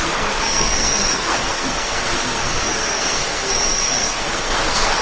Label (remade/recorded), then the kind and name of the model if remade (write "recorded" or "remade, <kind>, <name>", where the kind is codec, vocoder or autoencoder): remade, codec, SNAC